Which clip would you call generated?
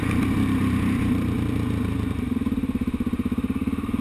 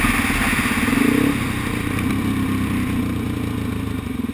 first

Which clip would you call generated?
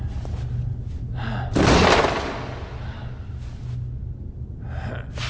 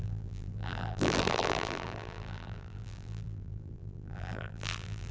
second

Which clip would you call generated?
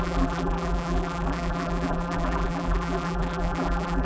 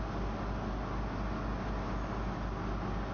first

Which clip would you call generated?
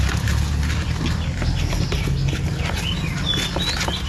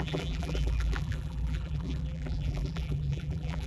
second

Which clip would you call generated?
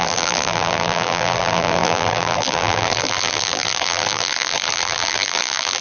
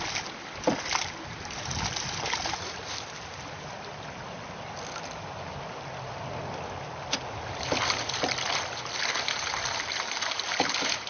first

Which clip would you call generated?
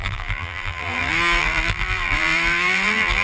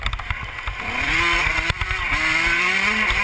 first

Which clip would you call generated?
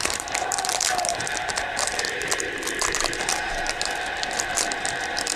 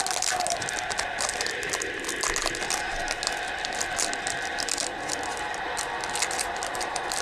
first